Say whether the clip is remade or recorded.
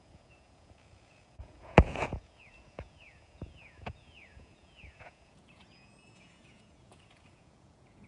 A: remade